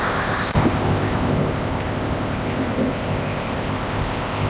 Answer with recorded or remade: remade